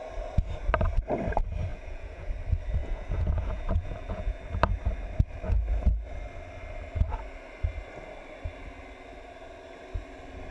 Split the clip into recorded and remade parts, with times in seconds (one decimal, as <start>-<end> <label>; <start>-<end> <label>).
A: 0.0-1.7 recorded; 1.7-2.3 remade; 2.3-2.8 recorded; 2.8-4.4 remade; 4.4-10.5 recorded